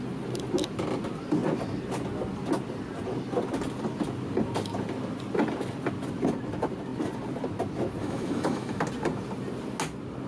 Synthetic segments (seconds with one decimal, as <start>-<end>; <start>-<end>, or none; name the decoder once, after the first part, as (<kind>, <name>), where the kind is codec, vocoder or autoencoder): 8.0-8.8 (autoencoder, DAC-VAE)